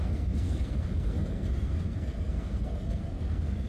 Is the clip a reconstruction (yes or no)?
yes